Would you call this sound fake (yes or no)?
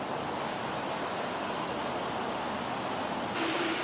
no